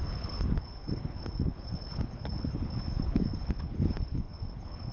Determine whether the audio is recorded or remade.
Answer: remade